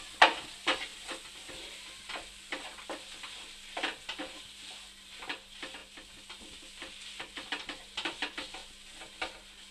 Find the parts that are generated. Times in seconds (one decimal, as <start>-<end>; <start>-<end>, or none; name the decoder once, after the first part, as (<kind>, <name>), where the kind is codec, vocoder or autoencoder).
5.8-6.4 (vocoder, BigVGAN v2)